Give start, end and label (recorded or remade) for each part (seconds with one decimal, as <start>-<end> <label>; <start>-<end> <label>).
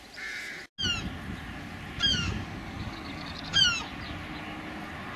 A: 0.0-2.1 recorded; 2.1-3.6 remade; 3.6-5.2 recorded